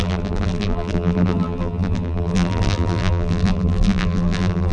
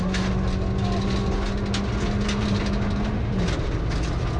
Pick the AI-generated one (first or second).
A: first